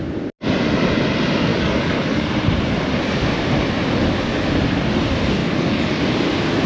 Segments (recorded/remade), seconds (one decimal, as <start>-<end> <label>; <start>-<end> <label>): 0.0-1.5 recorded; 1.5-2.3 remade; 2.3-5.4 recorded; 5.4-6.0 remade; 6.0-6.7 recorded